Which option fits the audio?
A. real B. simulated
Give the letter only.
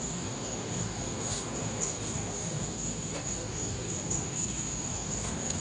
B